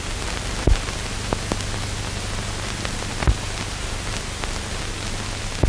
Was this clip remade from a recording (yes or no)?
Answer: no